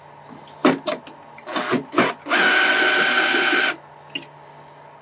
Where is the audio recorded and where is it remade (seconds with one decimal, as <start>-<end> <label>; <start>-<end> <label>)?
0.0-5.0 recorded